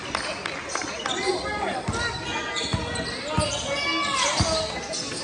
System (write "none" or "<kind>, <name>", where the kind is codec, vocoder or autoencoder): none